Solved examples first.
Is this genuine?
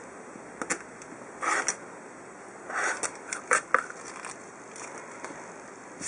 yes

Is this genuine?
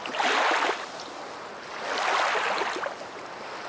yes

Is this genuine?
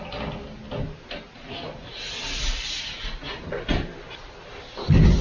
yes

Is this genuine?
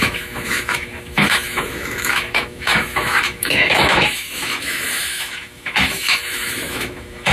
no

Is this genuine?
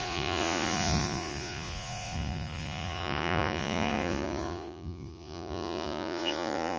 no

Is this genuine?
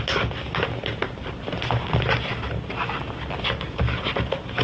yes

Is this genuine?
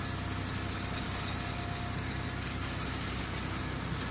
yes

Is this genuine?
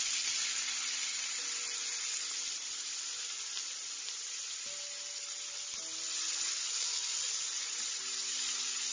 yes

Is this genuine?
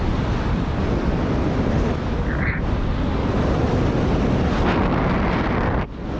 yes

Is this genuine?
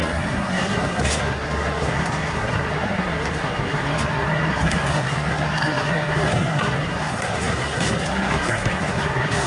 no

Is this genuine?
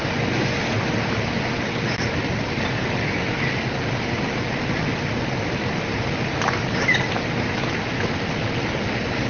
yes